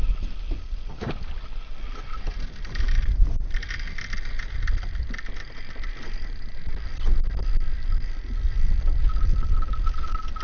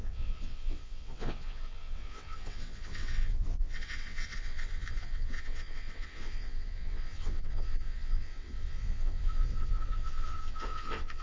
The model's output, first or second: second